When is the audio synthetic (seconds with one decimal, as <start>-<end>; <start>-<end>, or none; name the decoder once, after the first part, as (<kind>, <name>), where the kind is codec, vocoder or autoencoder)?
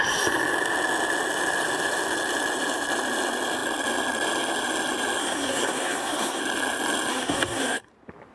5.2-6.4 (codec, SNAC); 7.1-7.9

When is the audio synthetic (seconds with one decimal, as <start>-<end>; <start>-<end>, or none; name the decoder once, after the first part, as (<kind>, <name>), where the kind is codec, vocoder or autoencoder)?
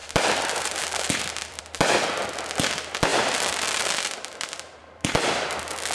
0.0-1.6 (vocoder, BigVGAN v2); 3.1-4.1; 4.8-5.5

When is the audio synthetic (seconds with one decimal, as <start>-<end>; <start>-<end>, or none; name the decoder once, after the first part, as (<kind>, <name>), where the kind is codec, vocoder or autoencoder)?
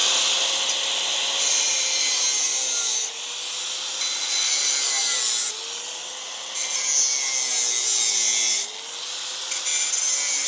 none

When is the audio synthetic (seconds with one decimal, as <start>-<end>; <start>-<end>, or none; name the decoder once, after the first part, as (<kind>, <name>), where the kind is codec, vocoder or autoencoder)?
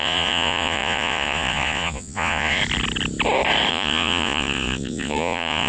0.0-2.6 (vocoder, Vocos); 3.7-5.7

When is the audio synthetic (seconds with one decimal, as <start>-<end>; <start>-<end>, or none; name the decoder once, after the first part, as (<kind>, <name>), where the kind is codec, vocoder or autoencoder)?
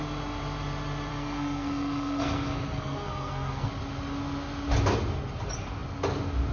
1.1-3.7 (codec, SNAC)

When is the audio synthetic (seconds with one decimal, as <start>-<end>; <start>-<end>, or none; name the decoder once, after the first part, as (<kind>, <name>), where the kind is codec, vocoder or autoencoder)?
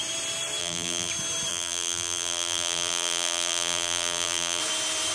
0.6-1.1 (vocoder, BigVGAN v2); 1.5-4.6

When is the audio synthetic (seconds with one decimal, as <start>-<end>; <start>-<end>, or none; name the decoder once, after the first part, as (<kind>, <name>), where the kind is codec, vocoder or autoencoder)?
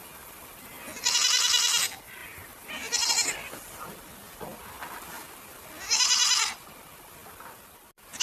none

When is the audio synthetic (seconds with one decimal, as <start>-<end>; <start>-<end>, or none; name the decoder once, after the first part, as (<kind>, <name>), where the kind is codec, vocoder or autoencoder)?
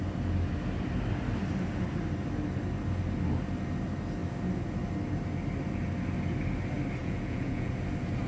7.0-7.7 (vocoder, Vocos)